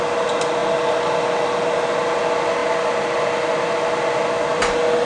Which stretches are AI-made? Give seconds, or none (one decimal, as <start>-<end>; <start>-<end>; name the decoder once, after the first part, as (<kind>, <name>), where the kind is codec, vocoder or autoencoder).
none